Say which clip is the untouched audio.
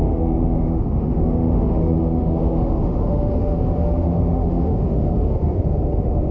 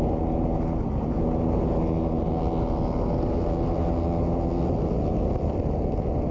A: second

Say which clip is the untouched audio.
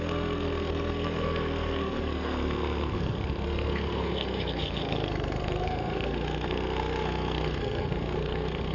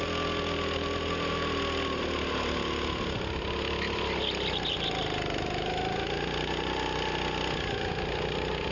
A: second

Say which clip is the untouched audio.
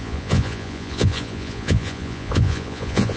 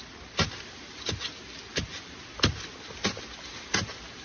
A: second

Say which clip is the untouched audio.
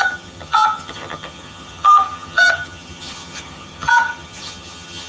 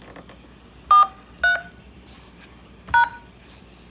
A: second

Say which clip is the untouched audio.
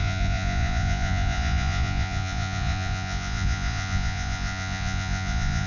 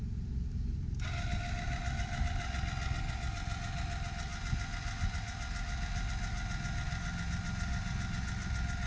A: second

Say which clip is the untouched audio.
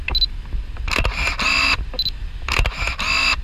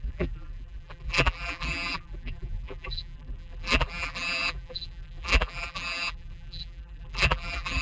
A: first